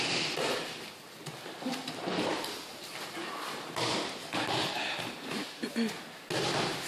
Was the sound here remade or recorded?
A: recorded